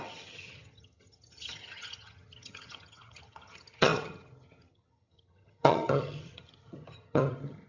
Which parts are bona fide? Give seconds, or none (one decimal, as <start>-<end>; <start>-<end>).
none